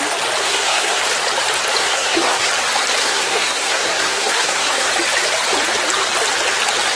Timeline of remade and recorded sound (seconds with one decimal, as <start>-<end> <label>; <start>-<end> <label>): 0.0-0.4 recorded; 0.4-1.0 remade; 1.0-1.8 recorded; 1.8-2.5 remade; 2.5-3.0 recorded; 3.0-4.9 remade; 4.9-6.9 recorded

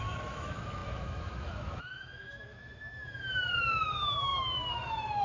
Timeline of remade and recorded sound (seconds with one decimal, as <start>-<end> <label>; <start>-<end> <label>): 0.0-5.2 remade

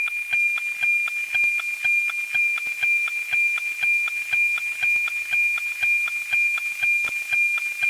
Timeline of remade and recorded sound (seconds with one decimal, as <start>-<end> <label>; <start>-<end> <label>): 0.0-7.9 recorded